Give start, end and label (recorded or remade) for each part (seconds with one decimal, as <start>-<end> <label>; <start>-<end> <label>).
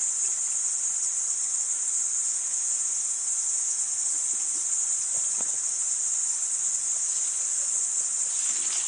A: 0.0-2.2 recorded; 2.2-4.0 remade; 4.0-8.9 recorded